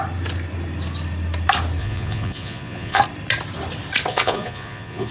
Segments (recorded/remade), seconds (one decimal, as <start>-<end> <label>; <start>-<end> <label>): 0.0-1.8 recorded; 1.8-3.0 remade; 3.0-4.1 recorded; 4.1-5.1 remade